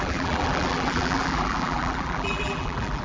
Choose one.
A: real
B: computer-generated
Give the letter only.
B